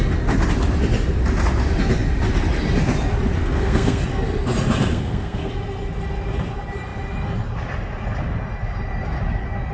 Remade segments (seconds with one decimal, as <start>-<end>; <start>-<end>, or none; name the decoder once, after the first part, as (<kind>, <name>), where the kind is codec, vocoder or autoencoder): 3.4-4.0 (codec, SNAC); 4.9-5.5